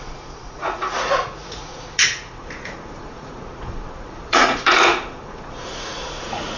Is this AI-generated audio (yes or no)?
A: yes